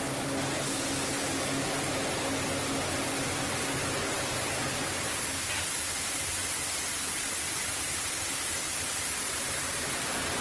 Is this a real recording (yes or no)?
yes